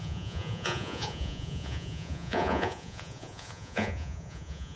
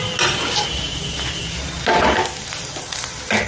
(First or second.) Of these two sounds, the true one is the second